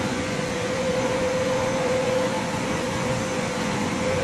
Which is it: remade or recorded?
remade